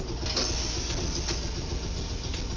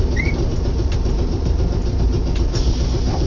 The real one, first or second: first